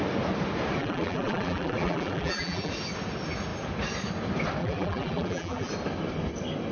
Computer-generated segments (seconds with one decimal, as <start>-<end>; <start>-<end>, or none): 0.8-2.7; 4.6-5.7